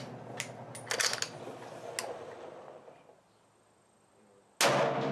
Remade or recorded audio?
recorded